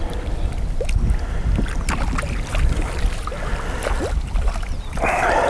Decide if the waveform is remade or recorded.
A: recorded